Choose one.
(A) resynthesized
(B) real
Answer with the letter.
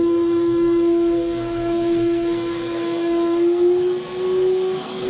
A